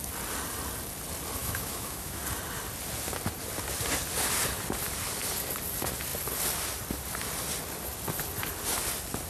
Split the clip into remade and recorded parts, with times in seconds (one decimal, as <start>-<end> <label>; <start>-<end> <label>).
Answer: 0.0-1.4 recorded; 1.4-2.2 remade; 2.2-9.3 recorded